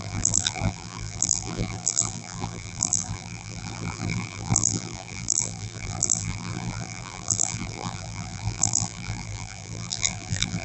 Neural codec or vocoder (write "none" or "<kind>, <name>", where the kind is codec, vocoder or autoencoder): vocoder, BigVGAN v2